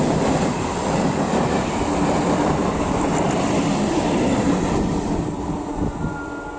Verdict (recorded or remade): recorded